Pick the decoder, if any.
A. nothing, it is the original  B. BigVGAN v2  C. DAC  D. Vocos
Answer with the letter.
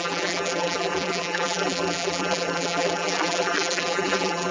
B